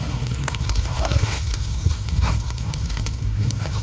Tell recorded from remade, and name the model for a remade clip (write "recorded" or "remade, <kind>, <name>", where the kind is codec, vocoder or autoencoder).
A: remade, codec, SNAC